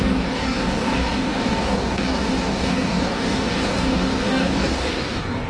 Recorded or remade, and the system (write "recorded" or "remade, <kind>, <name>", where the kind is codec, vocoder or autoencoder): remade, codec, DAC